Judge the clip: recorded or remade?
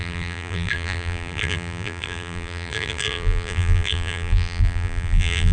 remade